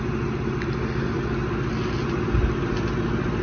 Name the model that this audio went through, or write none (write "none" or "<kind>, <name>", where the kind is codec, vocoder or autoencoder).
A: none